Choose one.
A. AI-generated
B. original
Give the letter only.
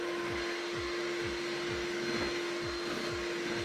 B